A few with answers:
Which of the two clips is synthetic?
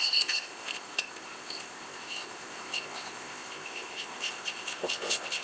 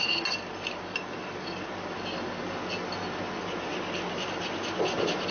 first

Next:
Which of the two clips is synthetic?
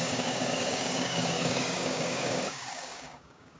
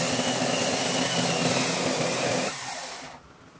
first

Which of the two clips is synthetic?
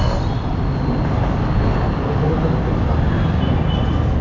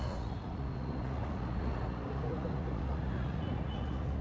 second